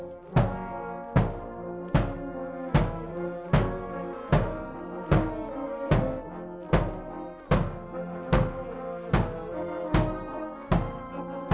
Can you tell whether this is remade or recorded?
recorded